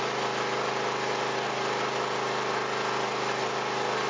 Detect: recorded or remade recorded